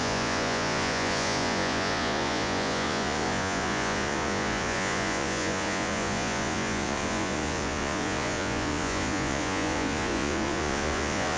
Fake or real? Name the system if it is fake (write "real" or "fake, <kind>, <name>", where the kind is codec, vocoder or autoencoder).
fake, vocoder, Vocos